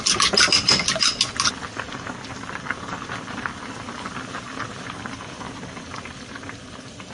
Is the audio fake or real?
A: real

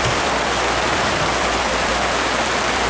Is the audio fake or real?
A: fake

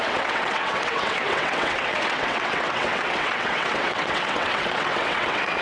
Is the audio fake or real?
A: fake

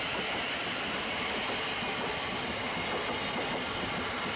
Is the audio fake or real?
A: real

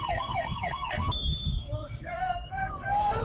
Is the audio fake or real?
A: fake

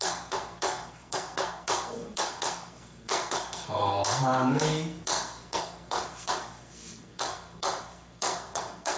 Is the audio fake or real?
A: fake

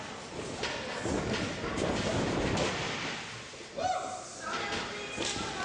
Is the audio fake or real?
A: real